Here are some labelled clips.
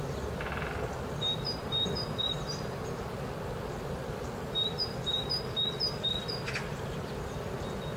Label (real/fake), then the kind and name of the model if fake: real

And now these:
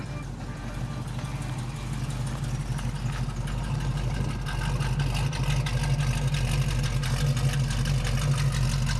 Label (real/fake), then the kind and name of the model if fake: real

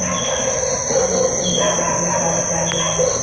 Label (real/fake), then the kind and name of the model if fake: real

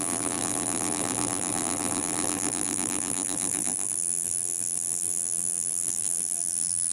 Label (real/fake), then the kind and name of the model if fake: fake, vocoder, BigVGAN v2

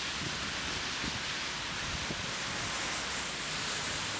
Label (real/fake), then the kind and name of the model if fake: real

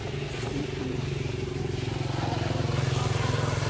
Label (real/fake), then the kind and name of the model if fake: real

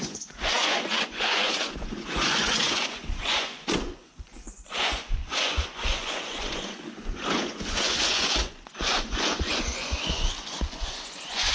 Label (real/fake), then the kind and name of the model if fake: fake, vocoder, Vocos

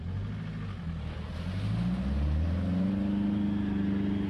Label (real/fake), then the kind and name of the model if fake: real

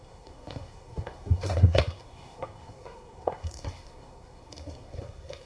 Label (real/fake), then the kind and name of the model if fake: fake, codec, SNAC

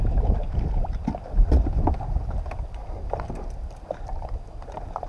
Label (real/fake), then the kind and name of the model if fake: real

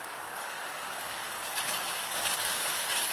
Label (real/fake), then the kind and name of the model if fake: fake, codec, DAC